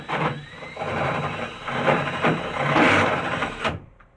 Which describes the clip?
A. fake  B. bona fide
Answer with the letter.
A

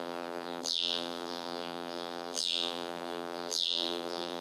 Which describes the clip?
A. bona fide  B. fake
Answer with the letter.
B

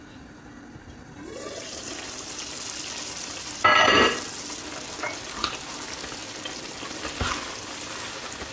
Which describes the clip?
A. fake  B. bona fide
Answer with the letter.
B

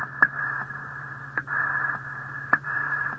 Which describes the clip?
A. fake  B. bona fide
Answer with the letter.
A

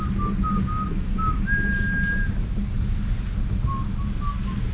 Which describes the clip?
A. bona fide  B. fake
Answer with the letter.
A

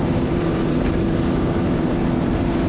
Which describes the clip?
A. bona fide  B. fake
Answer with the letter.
B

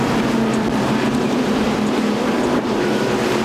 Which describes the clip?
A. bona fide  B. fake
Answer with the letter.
B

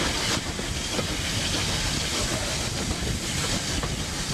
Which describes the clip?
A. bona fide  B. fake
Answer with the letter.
A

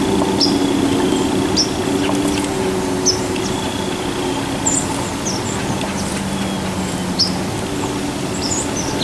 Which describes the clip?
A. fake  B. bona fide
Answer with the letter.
B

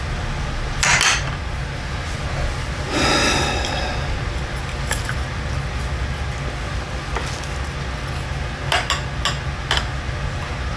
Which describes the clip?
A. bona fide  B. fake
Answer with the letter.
A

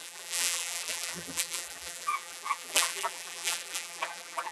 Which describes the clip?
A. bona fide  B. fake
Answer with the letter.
B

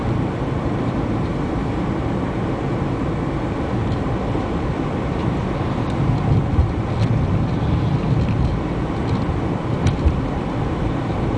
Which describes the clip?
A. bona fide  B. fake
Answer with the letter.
B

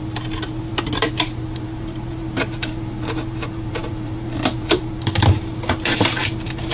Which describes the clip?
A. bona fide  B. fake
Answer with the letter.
B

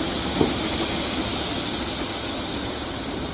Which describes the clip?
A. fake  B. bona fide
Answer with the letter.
B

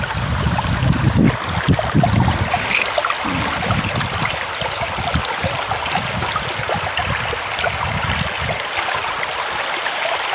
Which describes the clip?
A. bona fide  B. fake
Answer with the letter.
A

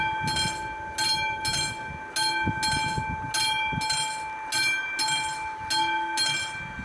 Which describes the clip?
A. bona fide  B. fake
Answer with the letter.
A